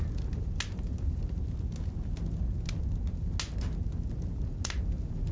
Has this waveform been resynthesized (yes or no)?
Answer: no